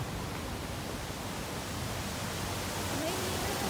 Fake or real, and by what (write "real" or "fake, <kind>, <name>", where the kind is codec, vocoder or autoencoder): fake, vocoder, BigVGAN v2